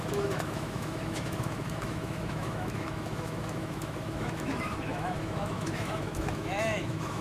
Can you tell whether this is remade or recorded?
remade